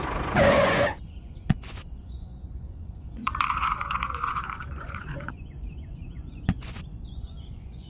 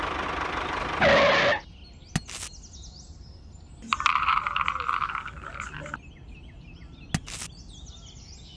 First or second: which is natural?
second